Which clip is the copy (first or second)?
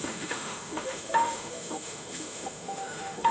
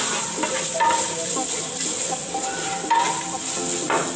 first